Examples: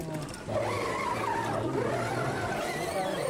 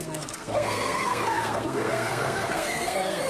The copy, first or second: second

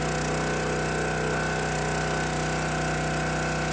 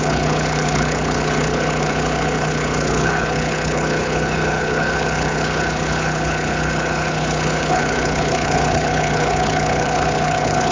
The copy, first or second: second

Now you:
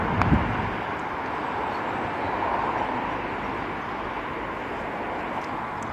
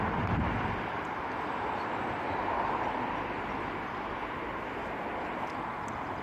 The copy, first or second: second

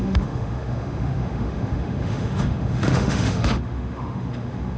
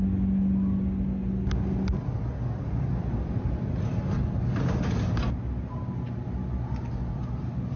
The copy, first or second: first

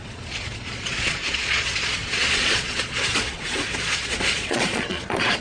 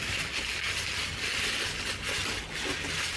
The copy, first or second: first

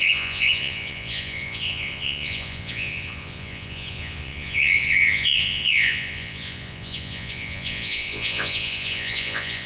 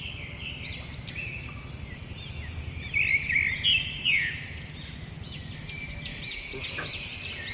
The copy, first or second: first